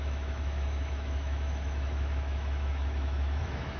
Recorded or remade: remade